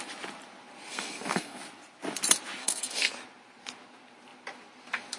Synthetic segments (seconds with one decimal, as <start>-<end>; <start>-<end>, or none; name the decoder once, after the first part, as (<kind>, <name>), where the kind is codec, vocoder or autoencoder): 0.9-1.6 (codec, SNAC); 2.6-3.1